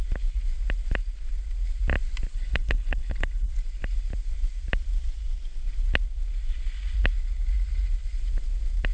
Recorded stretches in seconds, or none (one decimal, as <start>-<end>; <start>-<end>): 0.0-2.3; 3.5-8.9